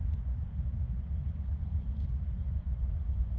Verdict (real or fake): fake